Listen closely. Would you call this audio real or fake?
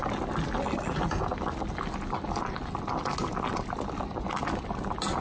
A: real